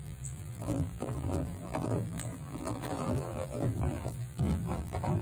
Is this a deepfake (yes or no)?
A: yes